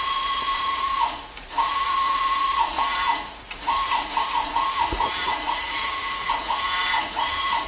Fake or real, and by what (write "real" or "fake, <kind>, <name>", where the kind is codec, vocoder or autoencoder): fake, vocoder, Vocos